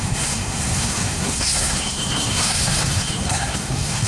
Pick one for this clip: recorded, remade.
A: remade